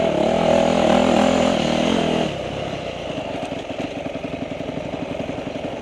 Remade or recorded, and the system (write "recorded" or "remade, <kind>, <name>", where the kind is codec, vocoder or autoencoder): recorded